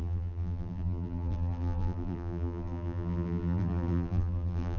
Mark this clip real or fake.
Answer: fake